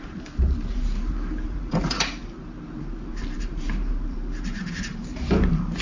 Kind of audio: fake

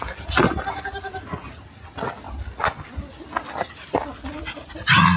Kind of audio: real